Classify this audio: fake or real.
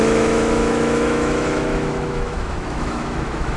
fake